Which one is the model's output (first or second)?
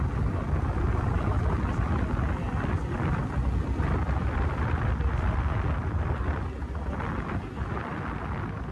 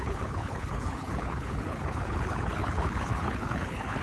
second